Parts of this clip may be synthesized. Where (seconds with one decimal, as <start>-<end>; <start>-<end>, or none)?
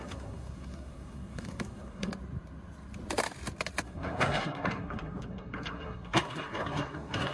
0.0-2.1; 3.8-7.3